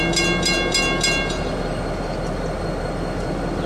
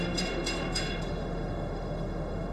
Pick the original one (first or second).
first